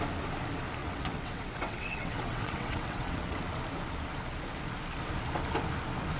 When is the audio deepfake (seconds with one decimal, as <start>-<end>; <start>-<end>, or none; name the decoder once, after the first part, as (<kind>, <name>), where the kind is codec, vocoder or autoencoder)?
0.8-3.4 (vocoder, WaveNeXt)